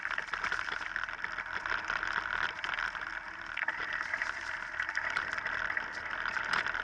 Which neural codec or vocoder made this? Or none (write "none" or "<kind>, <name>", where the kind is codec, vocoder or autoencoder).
none